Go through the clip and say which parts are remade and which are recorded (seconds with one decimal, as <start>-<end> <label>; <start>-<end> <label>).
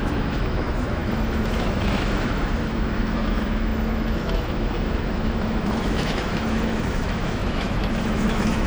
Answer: 0.0-8.7 remade